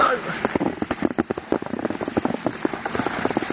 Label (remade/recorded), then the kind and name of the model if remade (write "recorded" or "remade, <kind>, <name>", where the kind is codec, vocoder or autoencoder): recorded